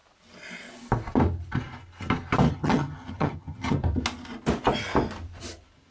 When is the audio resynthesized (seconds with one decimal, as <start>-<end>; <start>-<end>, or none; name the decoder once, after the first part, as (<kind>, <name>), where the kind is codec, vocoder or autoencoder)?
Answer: 2.5-3.8 (vocoder, HiFi-GAN)